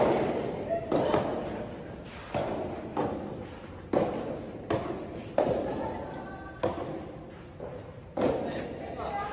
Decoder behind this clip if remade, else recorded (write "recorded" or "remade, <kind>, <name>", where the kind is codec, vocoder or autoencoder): recorded